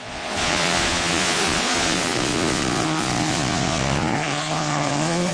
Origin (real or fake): fake